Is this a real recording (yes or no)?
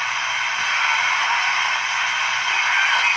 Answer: yes